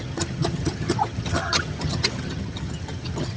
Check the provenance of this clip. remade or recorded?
remade